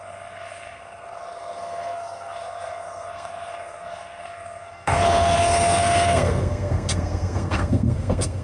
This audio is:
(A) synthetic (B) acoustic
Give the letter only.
A